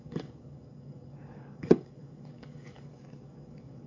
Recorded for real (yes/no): no